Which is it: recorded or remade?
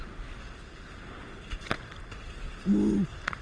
recorded